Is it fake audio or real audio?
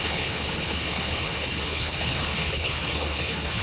fake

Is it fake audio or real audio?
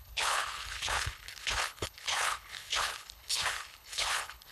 fake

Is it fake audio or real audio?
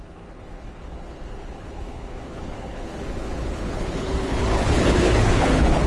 fake